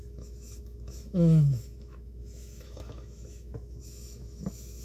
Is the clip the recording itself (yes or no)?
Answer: no